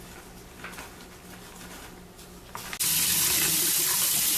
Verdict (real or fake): real